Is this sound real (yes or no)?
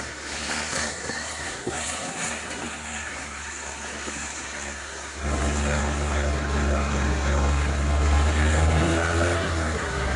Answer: no